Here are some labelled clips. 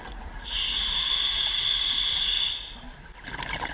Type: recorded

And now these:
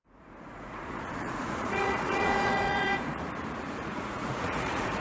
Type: remade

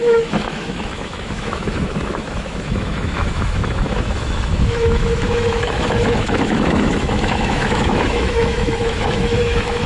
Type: remade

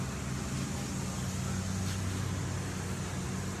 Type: recorded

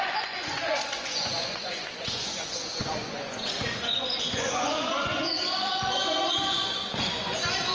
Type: remade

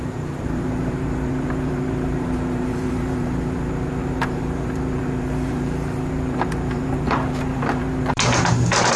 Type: remade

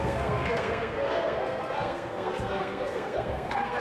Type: remade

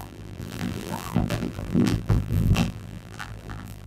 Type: remade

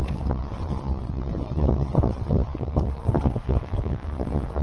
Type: remade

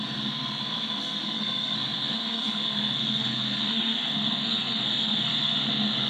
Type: remade